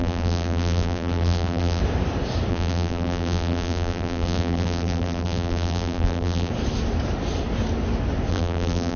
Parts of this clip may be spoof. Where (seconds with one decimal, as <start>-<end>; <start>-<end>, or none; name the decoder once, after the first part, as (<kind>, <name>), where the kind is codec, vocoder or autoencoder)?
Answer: 0.0-1.8 (vocoder, BigVGAN v2); 2.5-6.5; 8.3-9.0